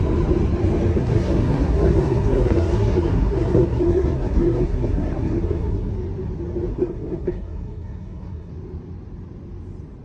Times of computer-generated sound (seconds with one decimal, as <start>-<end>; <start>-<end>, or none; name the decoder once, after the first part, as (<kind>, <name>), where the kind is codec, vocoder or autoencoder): 0.9-5.9 (codec, SNAC); 6.7-8.5